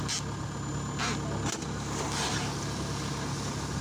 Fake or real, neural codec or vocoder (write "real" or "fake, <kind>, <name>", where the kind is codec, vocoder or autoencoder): real